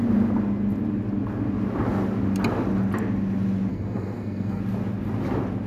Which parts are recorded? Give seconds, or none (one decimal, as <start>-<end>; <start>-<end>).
0.0-3.7; 4.6-5.7